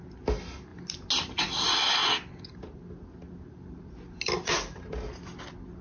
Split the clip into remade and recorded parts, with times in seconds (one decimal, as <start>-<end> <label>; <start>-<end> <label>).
0.0-5.8 recorded